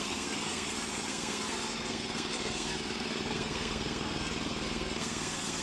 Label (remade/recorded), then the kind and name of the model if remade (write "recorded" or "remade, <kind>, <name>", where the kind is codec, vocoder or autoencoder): remade, codec, SNAC